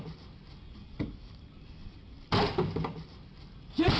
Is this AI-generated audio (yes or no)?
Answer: no